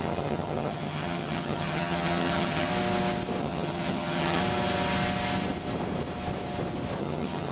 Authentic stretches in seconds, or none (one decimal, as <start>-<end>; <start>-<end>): 2.7-3.4; 4.4-7.0